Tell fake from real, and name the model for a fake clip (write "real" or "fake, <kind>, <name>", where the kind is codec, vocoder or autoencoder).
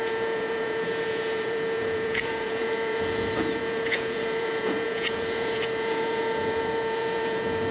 fake, vocoder, Vocos